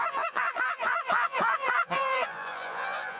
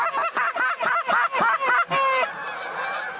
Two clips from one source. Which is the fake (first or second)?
first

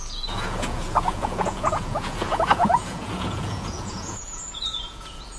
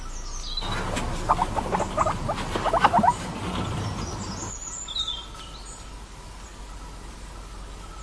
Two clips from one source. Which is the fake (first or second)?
first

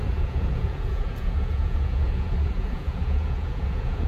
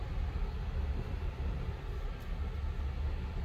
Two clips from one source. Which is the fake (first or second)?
first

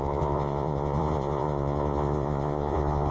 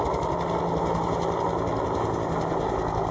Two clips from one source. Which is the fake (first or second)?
first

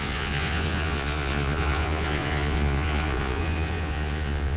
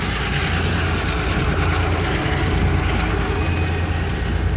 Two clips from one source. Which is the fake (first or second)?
first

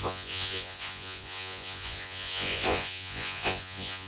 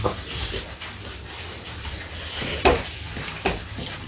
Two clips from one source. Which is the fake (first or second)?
first